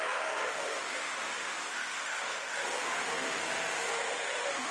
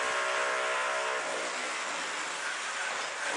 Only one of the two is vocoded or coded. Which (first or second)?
first